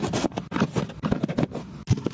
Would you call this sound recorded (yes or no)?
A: yes